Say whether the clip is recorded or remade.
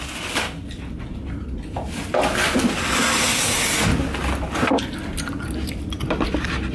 recorded